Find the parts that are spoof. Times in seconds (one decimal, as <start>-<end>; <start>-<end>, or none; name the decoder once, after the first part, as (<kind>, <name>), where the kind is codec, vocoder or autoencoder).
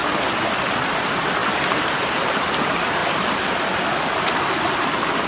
0.9-3.0 (vocoder, BigVGAN v2); 4.1-5.3